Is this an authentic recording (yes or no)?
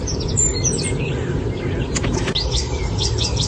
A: yes